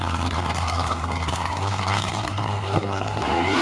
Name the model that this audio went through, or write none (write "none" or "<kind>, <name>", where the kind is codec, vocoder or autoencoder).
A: codec, SNAC